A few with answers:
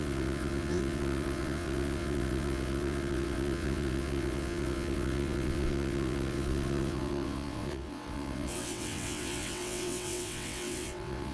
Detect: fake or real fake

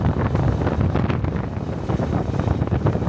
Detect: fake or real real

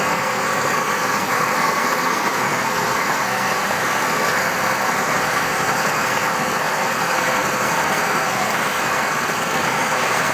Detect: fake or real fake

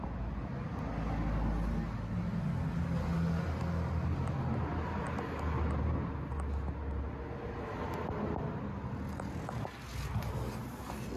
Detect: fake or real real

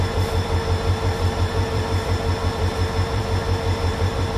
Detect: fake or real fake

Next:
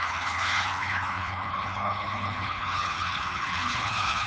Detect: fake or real fake